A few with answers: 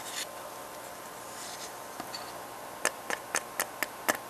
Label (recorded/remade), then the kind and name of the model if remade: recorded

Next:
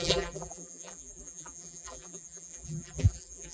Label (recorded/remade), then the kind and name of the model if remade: remade, vocoder, BigVGAN v2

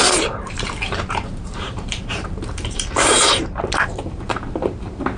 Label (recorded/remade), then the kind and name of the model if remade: remade, vocoder, BigVGAN v2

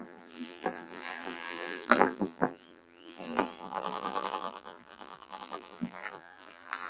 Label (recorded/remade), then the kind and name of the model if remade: remade, vocoder, BigVGAN v2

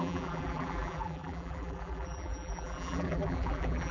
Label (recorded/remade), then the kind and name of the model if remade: remade, vocoder, BigVGAN v2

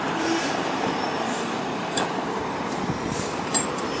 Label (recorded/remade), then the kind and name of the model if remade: remade, vocoder, BigVGAN v2